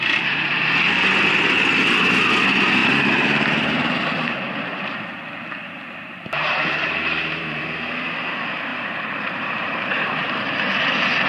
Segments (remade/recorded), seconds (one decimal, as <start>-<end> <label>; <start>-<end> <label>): 0.0-2.8 recorded; 2.8-7.6 remade; 7.6-8.7 recorded; 8.7-10.8 remade; 10.8-11.3 recorded